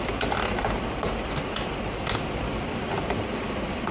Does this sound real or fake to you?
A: fake